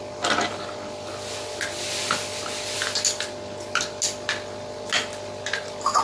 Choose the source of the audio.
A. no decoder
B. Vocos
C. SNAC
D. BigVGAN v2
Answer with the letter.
A